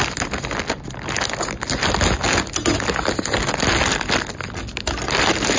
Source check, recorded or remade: recorded